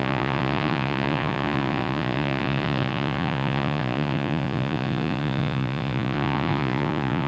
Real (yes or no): no